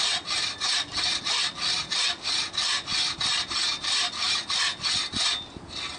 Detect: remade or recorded recorded